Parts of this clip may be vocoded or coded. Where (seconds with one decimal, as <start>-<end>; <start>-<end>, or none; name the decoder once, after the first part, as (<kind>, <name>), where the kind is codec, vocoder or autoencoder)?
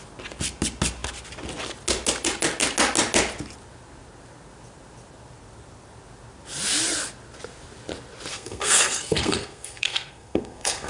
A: 8.3-10.9 (codec, SNAC)